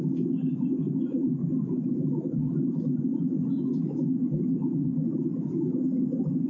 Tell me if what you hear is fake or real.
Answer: fake